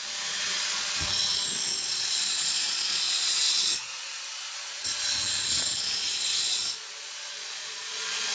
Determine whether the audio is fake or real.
fake